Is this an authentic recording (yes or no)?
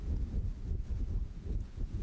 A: no